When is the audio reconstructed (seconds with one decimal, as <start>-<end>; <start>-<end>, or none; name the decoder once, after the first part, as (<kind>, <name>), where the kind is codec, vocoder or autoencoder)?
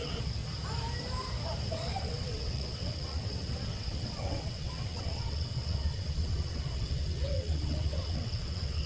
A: 0.0-0.4 (vocoder, WaveNeXt); 1.7-8.9